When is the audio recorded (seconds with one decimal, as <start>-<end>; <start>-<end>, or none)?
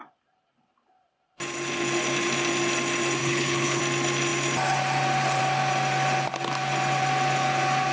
0.0-3.2; 3.8-7.9